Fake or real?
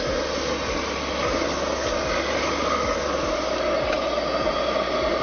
real